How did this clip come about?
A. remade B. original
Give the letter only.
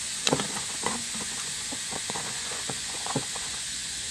A